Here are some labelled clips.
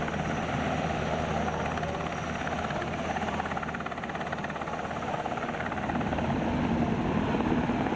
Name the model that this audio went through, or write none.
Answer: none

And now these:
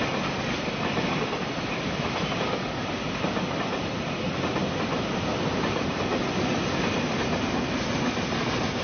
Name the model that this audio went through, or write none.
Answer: none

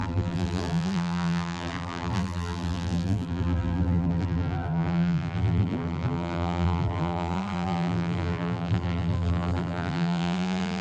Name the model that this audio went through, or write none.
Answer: vocoder, BigVGAN v2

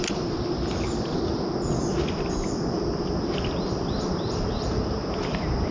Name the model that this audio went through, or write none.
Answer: none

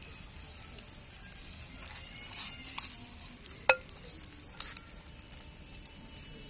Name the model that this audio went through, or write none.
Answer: none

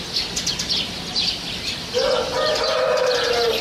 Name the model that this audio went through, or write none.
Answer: none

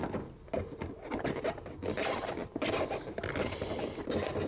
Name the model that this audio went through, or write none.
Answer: none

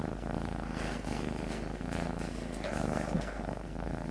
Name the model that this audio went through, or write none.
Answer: codec, SNAC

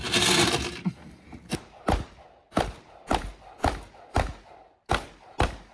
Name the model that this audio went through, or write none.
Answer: none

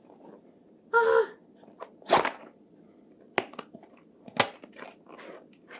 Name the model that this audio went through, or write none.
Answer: none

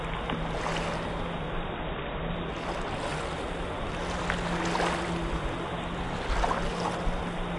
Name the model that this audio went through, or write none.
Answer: none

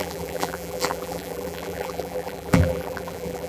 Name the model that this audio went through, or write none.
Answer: vocoder, BigVGAN v2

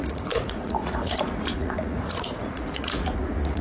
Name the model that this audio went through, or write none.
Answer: vocoder, Vocos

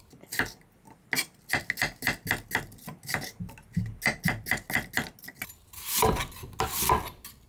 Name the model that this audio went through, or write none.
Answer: none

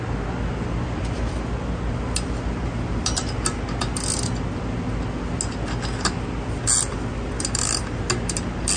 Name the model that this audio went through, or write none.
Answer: none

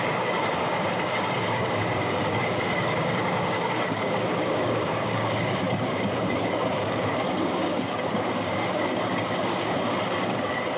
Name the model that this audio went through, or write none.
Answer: codec, DAC